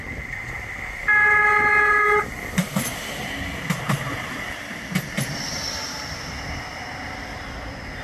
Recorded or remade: recorded